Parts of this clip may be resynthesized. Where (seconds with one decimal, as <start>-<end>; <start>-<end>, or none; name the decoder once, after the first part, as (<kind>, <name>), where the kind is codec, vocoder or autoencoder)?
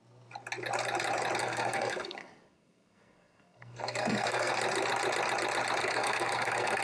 1.4-4.5 (codec, SNAC); 5.8-6.8